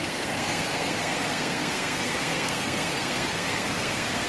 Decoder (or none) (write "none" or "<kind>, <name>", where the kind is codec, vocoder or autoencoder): codec, SNAC